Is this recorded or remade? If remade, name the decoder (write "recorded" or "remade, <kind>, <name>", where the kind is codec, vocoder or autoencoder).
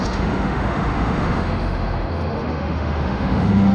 remade, autoencoder, DAC-VAE